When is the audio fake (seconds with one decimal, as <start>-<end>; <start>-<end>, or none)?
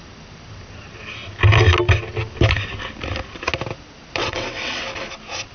4.2-4.8